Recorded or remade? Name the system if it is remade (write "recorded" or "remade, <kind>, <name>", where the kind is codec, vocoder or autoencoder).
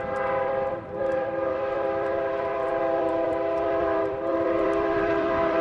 remade, vocoder, BigVGAN v2